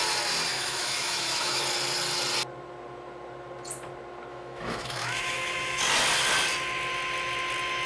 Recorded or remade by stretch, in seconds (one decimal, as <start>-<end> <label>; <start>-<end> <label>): 0.0-0.5 recorded; 0.5-1.6 remade; 1.6-4.3 recorded; 4.3-5.8 remade; 5.8-7.9 recorded